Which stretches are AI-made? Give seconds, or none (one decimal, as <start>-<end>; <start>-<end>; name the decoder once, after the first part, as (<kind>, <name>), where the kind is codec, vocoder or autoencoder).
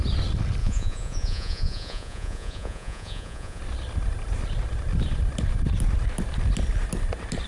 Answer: 0.6-3.6 (vocoder, Vocos)